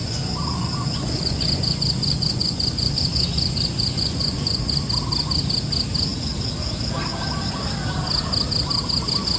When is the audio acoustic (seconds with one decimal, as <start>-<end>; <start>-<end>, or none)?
4.9-9.4